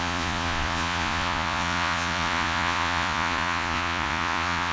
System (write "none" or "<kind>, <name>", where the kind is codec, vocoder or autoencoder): vocoder, Vocos